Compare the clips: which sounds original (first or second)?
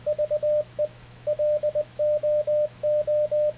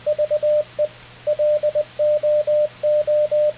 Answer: second